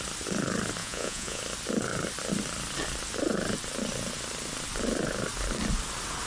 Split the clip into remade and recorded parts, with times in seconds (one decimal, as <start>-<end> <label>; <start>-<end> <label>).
0.0-0.8 recorded; 0.8-1.4 remade; 1.4-6.3 recorded